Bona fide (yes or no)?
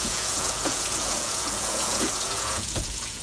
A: no